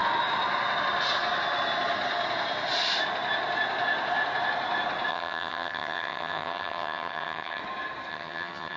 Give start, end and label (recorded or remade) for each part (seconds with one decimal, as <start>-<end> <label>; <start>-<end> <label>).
0.0-5.1 recorded; 5.1-7.6 remade; 7.6-8.1 recorded; 8.1-8.8 remade